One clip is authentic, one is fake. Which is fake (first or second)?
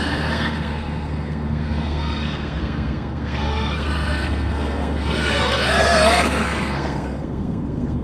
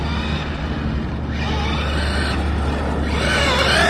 first